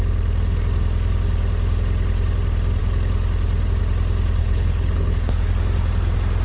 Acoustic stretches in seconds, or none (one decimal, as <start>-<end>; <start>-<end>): 0.0-4.4; 5.5-6.4